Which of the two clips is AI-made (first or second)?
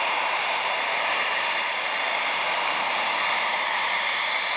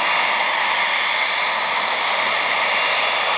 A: first